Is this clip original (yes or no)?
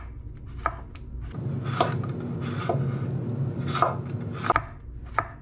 yes